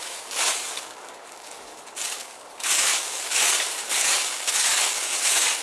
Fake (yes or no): yes